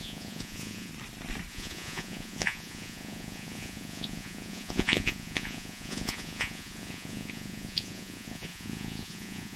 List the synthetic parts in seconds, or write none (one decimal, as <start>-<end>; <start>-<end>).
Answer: 0.0-0.9; 1.5-9.6